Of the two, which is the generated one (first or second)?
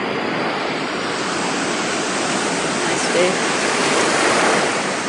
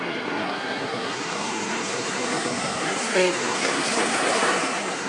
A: second